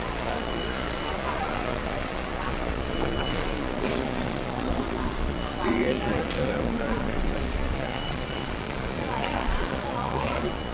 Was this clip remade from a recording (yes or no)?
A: yes